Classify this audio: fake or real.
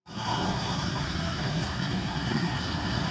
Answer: fake